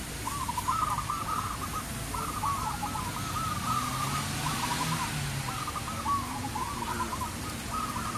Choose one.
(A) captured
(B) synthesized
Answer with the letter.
A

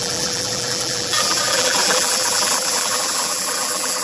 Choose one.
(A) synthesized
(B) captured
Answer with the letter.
A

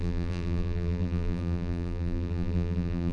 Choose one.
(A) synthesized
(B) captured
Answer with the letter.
A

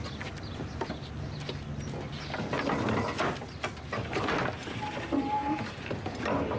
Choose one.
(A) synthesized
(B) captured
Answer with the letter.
B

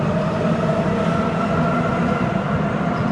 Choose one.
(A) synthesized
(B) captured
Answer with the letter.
B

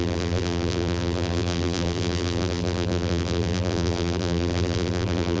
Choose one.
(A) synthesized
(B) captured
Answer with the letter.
A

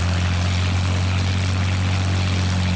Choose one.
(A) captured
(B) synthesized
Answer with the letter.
A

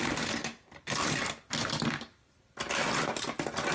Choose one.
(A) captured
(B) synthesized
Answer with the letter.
A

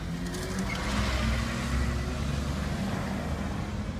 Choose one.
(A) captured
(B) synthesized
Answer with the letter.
A